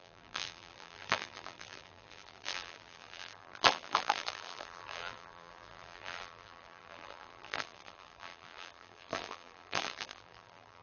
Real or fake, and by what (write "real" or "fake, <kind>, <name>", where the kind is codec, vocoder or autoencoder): fake, vocoder, BigVGAN v2